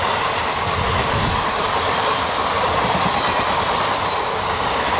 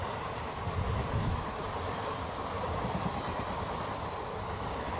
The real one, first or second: first